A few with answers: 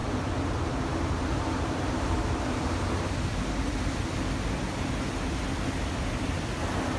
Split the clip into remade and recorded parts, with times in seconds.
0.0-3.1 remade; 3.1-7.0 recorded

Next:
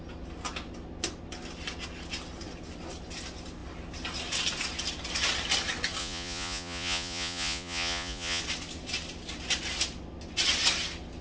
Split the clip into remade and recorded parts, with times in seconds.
0.0-6.0 recorded; 6.0-8.4 remade; 8.4-11.2 recorded

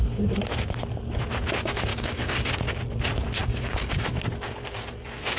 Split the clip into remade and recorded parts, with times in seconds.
0.0-1.9 recorded; 1.9-2.5 remade; 2.5-3.4 recorded; 3.4-4.1 remade; 4.1-5.4 recorded

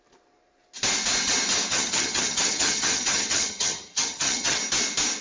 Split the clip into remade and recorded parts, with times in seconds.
0.0-1.7 recorded; 1.7-4.6 remade; 4.6-5.2 recorded

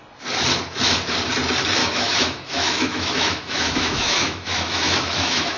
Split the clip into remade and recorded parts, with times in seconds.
0.0-1.8 recorded; 1.8-5.6 remade

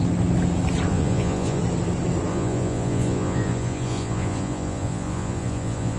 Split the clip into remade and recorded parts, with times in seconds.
0.0-0.9 recorded; 0.9-1.6 remade; 1.6-2.3 recorded; 2.3-6.0 remade

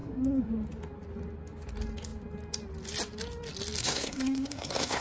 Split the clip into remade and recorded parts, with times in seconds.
0.0-0.5 remade; 0.5-3.8 recorded; 3.8-5.0 remade

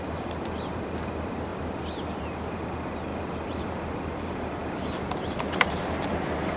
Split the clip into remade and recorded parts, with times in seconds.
0.0-1.5 remade; 1.5-2.2 recorded; 2.2-6.6 remade